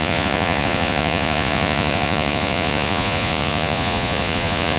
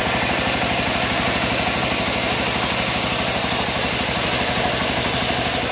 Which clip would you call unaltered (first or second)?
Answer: second